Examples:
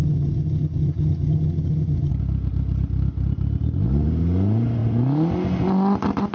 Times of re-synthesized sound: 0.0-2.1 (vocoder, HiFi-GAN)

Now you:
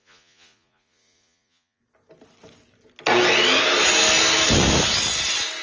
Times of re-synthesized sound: 0.0-1.8 (vocoder, Vocos)